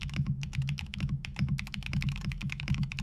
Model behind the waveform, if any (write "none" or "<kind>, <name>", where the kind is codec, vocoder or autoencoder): autoencoder, DAC-VAE